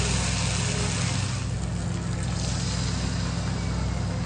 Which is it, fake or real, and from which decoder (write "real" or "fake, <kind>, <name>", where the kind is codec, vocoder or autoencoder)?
real